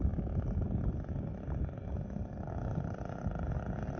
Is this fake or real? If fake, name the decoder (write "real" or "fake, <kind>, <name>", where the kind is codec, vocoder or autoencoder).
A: real